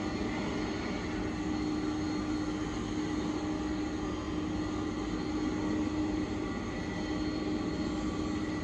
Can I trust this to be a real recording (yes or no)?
yes